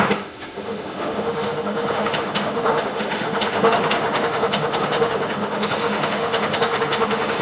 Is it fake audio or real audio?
fake